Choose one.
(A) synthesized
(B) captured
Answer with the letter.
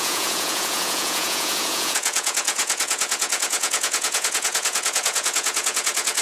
A